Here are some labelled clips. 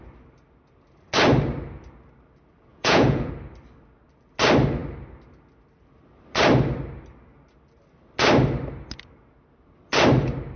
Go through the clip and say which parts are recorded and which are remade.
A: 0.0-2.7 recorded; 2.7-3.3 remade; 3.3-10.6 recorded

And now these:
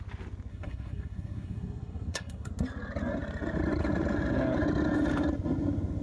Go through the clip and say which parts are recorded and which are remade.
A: 0.0-0.5 recorded; 0.5-2.5 remade; 2.5-6.0 recorded

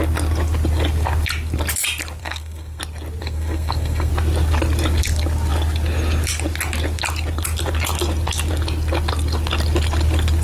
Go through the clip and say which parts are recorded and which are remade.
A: 0.0-2.2 recorded; 2.2-2.8 remade; 2.8-3.2 recorded; 3.2-4.1 remade; 4.1-10.4 recorded

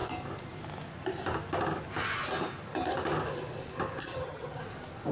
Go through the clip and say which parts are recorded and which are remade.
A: 0.0-4.0 recorded; 4.0-4.6 remade; 4.6-5.1 recorded